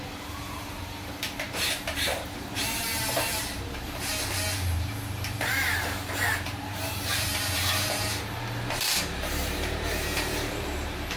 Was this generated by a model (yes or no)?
yes